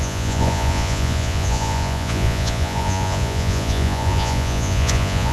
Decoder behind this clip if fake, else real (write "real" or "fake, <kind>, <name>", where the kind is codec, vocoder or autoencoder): fake, vocoder, Vocos